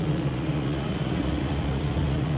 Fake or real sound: fake